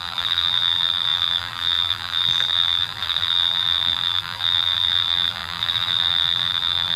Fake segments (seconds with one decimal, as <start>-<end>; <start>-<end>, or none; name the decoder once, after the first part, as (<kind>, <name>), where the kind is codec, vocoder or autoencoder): 0.0-7.0 (vocoder, BigVGAN v2)